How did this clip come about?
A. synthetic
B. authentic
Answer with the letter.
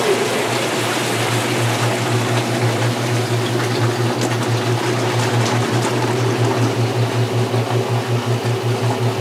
B